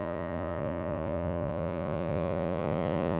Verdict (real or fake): fake